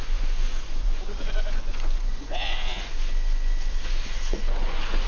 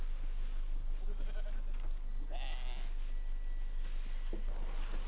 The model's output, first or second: first